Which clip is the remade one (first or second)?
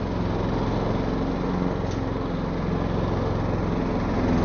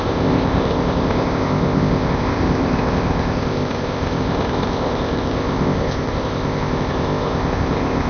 second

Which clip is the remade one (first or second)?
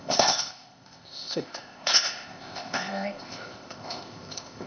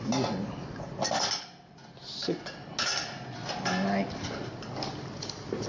first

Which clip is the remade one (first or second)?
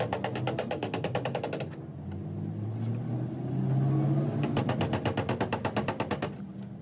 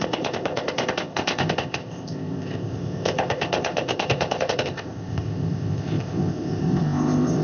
second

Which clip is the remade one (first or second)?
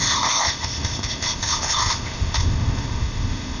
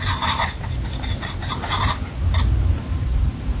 first